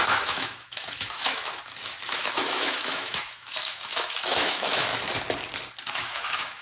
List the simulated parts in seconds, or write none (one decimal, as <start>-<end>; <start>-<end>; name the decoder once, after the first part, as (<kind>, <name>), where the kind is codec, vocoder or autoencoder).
0.0-1.6 (autoencoder, DAC-VAE); 2.1-4.9; 5.9-6.6